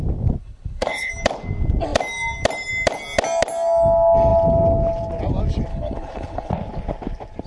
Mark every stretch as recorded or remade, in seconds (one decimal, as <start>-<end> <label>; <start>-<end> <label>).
0.0-0.4 recorded; 0.4-1.1 remade; 1.1-5.7 recorded; 5.7-6.5 remade; 6.5-7.5 recorded

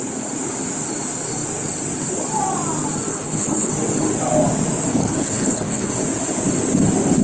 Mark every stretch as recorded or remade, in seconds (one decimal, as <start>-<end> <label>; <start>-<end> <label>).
0.0-3.1 recorded; 3.1-3.7 remade; 3.7-4.9 recorded; 4.9-5.9 remade; 5.9-7.2 recorded

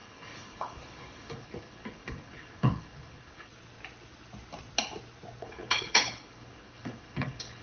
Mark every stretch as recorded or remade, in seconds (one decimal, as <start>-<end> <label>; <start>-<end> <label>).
0.0-3.5 remade; 3.5-5.4 recorded; 5.4-7.6 remade

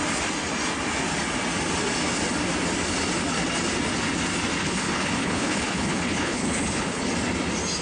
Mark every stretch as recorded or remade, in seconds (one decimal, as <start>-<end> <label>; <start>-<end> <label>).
0.0-4.6 recorded; 4.6-7.1 remade; 7.1-7.8 recorded